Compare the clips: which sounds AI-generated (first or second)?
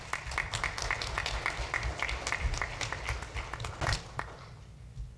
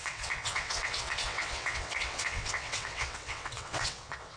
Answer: second